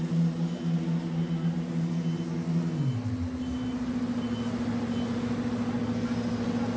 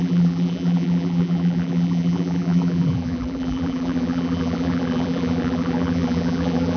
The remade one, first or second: second